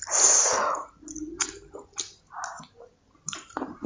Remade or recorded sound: recorded